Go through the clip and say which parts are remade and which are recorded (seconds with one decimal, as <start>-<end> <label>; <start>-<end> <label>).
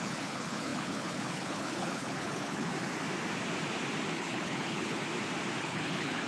0.0-2.7 remade; 2.7-4.1 recorded; 4.1-5.0 remade; 5.0-5.6 recorded; 5.6-6.3 remade